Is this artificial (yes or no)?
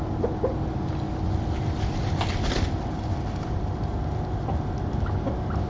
no